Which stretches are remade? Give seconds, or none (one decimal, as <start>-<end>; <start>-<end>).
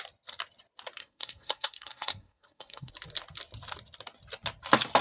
1.0-2.9